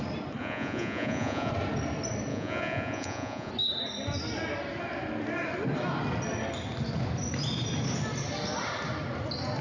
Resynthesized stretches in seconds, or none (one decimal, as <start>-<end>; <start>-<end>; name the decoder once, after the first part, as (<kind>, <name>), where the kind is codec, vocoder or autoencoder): 0.4-1.5 (vocoder, Vocos); 2.3-3.5